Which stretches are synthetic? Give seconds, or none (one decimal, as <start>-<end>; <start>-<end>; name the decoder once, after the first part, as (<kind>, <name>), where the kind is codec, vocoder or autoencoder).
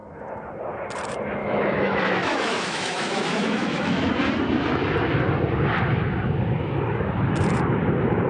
1.4-4.1 (autoencoder, DAC-VAE)